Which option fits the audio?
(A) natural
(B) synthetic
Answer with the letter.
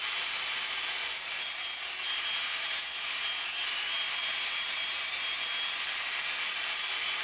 A